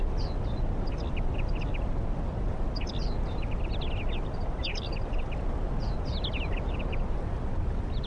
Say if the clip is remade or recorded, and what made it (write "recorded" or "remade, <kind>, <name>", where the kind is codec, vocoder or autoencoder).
recorded